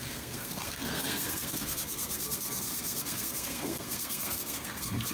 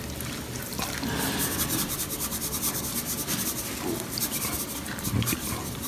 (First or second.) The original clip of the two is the second